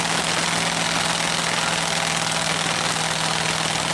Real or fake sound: real